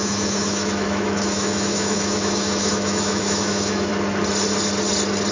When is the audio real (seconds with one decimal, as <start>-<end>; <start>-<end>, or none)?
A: 3.9-5.3